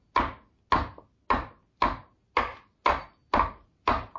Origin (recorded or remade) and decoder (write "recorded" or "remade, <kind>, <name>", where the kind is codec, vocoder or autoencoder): recorded